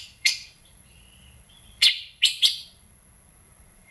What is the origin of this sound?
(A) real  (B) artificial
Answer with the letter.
B